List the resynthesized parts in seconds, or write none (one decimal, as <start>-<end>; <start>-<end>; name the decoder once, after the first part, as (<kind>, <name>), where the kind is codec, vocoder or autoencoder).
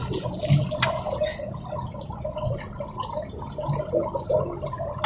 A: none